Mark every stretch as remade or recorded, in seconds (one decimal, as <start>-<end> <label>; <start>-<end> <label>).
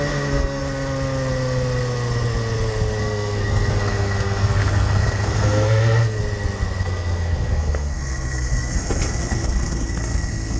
0.0-0.6 remade; 0.6-3.0 recorded; 3.0-6.2 remade; 6.2-6.8 recorded; 6.8-10.6 remade